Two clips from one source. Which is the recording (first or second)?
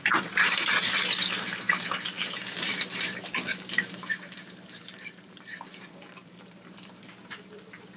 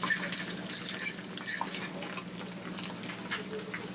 second